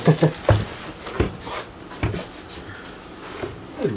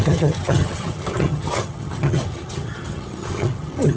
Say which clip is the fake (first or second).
second